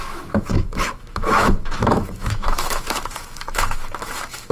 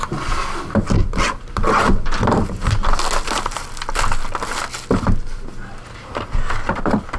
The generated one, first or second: first